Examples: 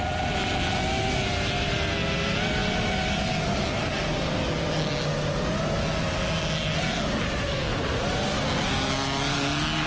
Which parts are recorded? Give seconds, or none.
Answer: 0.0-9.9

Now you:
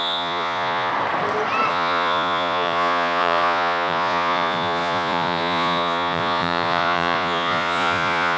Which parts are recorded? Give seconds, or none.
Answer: 0.9-1.7

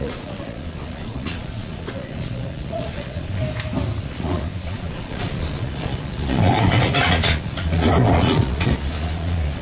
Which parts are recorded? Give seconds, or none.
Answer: 3.4-4.0

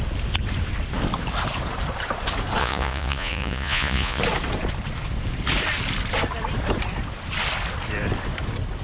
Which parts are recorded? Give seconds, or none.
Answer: 0.0-2.6; 4.2-8.8

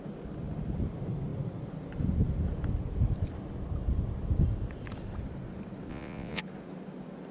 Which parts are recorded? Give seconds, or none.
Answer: 0.0-5.9; 6.4-7.3